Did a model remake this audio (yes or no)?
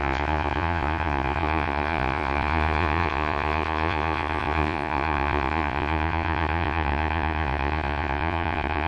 yes